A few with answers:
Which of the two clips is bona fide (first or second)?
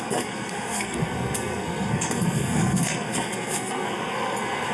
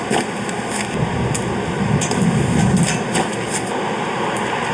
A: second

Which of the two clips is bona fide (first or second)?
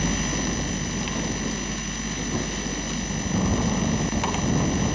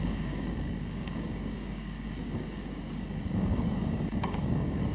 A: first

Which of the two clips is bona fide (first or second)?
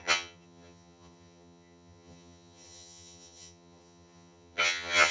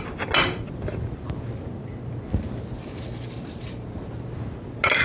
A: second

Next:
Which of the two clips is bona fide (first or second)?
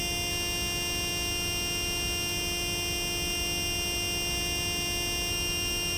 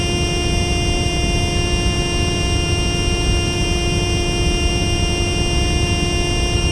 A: first